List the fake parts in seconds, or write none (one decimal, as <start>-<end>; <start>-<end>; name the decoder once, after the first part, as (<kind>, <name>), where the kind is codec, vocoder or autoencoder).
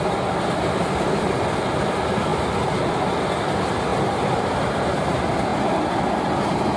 3.9-4.5 (vocoder, BigVGAN v2)